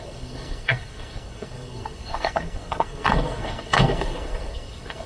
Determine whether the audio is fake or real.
fake